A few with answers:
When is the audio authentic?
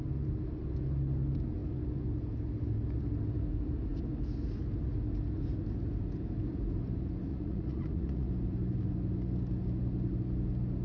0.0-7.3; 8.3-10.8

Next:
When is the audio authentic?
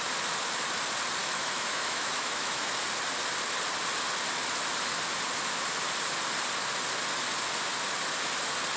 0.0-1.2; 2.7-8.8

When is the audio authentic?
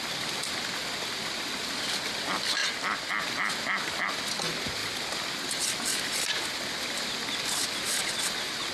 0.0-2.6; 3.1-8.7